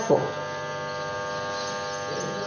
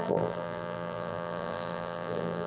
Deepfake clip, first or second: second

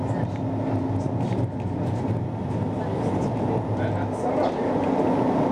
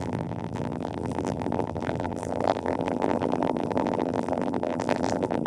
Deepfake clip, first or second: second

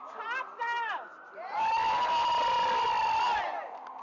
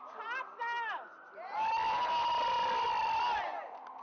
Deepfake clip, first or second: first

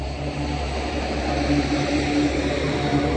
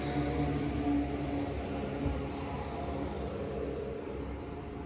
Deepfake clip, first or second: first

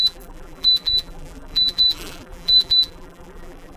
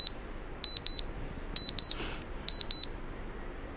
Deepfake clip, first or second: first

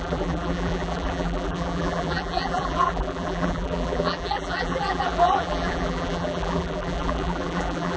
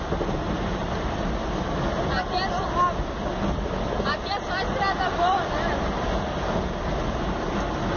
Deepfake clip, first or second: first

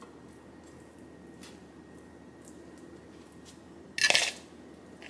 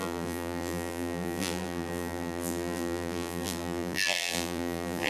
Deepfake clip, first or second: second